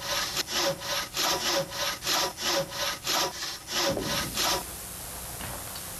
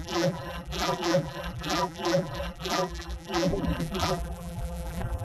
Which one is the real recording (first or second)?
first